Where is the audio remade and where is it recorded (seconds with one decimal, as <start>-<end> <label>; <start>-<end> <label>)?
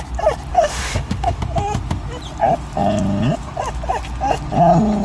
0.0-0.5 recorded; 0.5-1.4 remade; 1.4-5.0 recorded